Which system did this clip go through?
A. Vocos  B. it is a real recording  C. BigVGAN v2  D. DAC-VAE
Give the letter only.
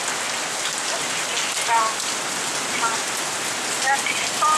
B